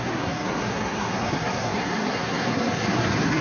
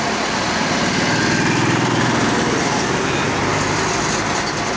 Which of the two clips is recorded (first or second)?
second